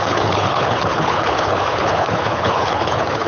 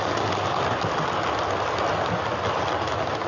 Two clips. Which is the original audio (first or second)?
second